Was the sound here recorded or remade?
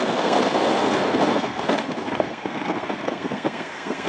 remade